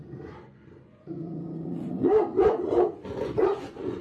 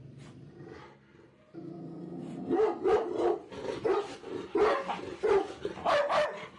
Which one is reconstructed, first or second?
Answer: first